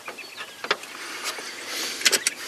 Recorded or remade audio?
recorded